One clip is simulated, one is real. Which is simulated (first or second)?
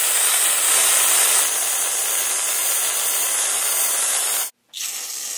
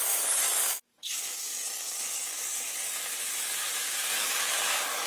second